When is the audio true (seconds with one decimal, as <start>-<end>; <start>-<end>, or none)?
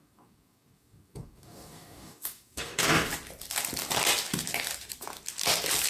3.1-5.9